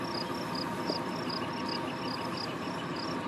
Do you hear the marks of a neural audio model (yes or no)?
no